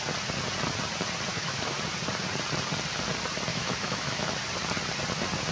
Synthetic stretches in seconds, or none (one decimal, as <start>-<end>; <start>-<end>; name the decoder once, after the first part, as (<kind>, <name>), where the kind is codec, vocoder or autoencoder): 1.3-1.8 (autoencoder, DAC-VAE); 3.5-4.3